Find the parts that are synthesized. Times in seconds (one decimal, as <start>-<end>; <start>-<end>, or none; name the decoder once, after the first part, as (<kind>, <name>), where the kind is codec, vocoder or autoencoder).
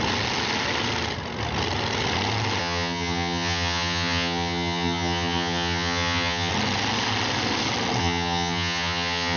2.6-6.5 (vocoder, HiFi-GAN); 8.0-9.4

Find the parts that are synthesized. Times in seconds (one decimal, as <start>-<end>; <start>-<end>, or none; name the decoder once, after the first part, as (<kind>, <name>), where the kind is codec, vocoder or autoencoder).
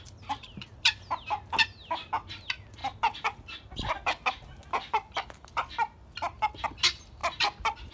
none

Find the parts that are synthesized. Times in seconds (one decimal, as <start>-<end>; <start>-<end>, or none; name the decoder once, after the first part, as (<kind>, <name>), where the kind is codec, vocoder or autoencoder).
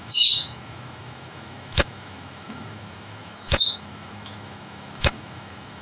0.0-5.8 (autoencoder, DAC-VAE)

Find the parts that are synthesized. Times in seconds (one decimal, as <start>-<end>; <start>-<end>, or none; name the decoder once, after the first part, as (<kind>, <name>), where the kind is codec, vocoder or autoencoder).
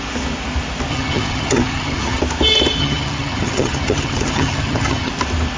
0.9-2.2 (vocoder, HiFi-GAN); 2.8-5.1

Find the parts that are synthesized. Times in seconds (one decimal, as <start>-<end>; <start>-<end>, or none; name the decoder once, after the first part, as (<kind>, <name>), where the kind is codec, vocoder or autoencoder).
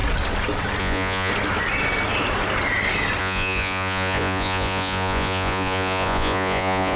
0.8-1.3 (vocoder, Vocos); 3.2-7.0